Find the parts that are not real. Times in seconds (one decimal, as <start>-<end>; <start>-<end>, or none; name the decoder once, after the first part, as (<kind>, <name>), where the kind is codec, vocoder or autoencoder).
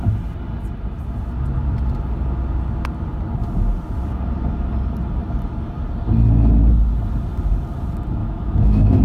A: 8.2-9.0 (autoencoder, DAC-VAE)